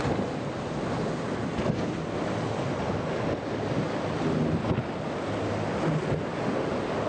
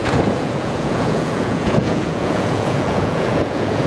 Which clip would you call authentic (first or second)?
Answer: first